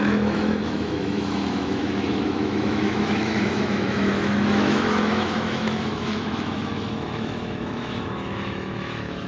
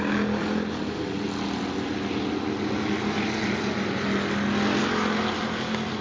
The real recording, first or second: second